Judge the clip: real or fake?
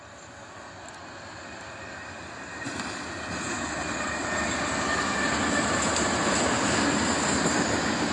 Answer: real